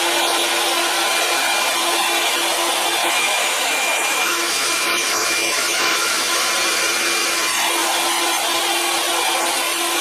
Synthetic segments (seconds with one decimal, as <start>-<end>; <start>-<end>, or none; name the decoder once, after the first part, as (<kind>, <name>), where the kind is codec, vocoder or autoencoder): 3.0-6.5 (autoencoder, DAC-VAE)